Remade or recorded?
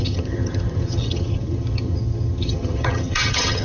remade